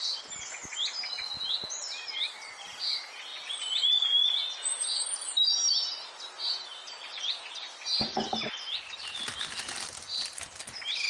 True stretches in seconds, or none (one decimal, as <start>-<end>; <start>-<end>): 0.0-11.1